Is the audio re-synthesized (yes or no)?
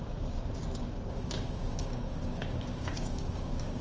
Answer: yes